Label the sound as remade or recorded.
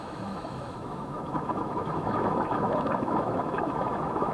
remade